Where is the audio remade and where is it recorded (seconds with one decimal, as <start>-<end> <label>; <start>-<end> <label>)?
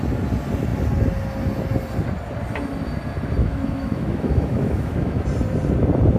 0.0-3.4 recorded; 3.4-5.2 remade; 5.2-6.2 recorded